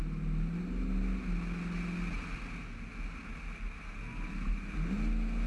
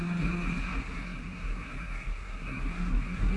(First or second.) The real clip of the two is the first